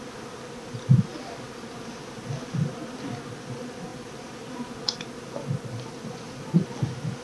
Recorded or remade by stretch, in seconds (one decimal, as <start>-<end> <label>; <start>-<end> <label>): 0.0-7.2 recorded